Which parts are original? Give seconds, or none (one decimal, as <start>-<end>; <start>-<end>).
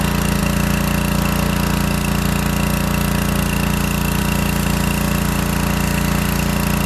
0.0-6.9